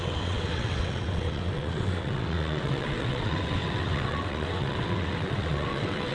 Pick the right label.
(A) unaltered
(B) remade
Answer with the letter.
B